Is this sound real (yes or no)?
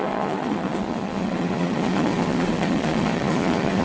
no